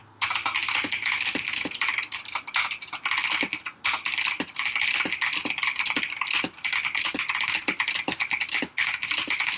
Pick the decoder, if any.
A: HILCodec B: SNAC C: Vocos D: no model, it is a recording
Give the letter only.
D